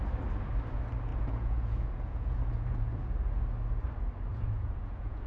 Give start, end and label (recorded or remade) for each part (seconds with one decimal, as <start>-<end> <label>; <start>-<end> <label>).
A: 0.0-1.1 recorded; 1.1-3.0 remade; 3.0-4.3 recorded; 4.3-5.3 remade